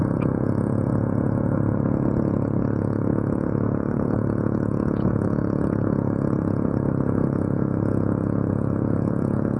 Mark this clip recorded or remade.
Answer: remade